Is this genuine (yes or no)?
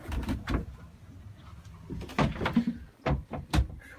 yes